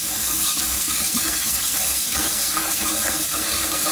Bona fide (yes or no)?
no